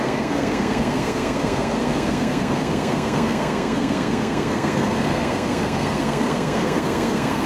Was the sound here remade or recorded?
remade